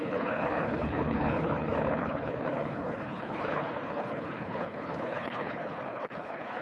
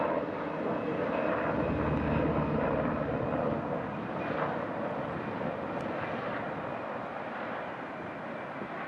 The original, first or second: second